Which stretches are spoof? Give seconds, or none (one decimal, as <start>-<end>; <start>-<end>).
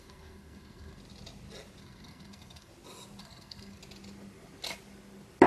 0.0-1.0; 1.8-2.7; 3.2-3.8